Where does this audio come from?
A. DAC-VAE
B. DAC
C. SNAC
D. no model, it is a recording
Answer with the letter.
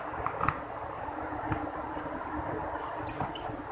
D